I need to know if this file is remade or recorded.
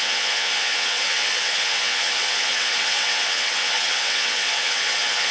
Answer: remade